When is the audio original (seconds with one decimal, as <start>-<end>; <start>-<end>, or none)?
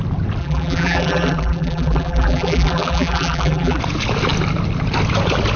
0.0-0.4; 3.8-5.6